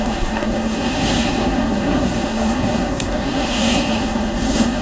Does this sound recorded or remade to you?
remade